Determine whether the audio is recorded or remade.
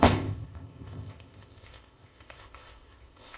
remade